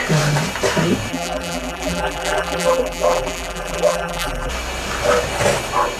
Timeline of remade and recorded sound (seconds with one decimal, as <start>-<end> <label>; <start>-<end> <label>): 0.0-1.1 recorded; 1.1-4.5 remade; 4.5-6.0 recorded